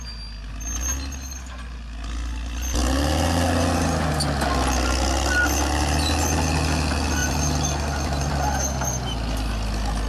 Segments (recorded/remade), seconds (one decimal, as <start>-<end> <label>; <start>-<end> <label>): 0.0-7.2 recorded; 7.2-8.3 remade; 8.3-10.1 recorded